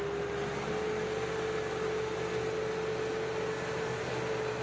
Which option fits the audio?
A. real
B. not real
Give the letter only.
A